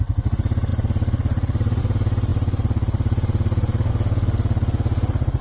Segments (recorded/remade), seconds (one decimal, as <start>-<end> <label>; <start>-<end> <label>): 0.0-0.7 recorded; 0.7-1.8 remade; 1.8-2.3 recorded; 2.3-3.9 remade; 3.9-5.4 recorded